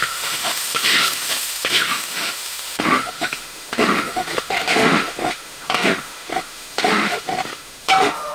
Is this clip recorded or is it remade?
remade